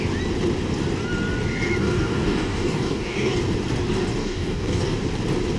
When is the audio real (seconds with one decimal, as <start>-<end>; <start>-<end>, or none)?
0.0-1.8; 3.4-4.2; 4.8-5.6

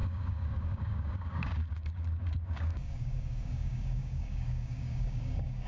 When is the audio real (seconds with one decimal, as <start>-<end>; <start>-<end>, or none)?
none

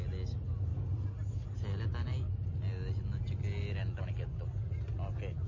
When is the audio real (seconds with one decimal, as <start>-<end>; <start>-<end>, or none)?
0.0-5.5

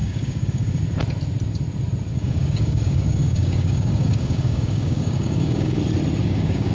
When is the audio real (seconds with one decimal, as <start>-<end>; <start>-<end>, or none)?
0.8-2.1; 5.8-6.2

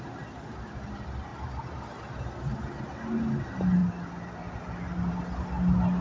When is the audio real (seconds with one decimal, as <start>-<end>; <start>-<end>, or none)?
0.0-6.0

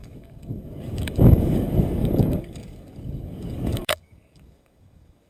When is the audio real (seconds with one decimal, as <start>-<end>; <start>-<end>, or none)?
none

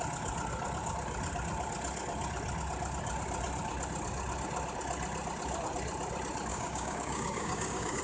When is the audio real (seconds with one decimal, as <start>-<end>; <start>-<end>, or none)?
0.0-6.5